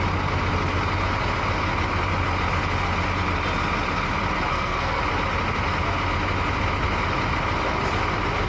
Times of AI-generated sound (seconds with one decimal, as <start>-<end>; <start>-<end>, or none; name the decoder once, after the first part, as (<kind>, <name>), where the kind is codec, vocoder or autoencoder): 4.5-5.0 (codec, SNAC)